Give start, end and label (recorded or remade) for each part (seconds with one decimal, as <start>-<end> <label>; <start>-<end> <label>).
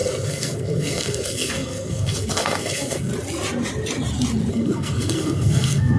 0.0-3.1 remade; 3.1-4.5 recorded; 4.5-6.0 remade